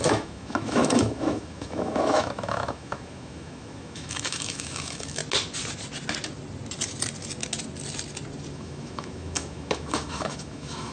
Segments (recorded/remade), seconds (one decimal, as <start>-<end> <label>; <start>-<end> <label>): 0.0-5.2 remade; 5.2-8.5 recorded; 8.5-10.9 remade